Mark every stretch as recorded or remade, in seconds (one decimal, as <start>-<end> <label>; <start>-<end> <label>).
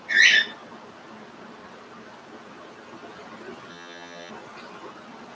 0.0-3.7 recorded; 3.7-4.3 remade; 4.3-5.3 recorded